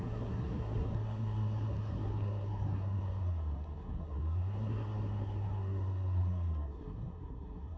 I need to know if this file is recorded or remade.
remade